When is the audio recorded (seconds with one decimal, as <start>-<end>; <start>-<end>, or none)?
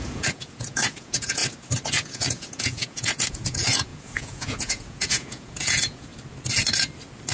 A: 1.4-1.9; 6.1-7.3